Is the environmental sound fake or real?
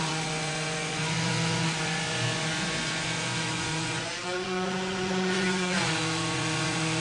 fake